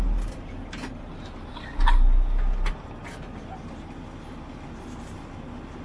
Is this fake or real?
real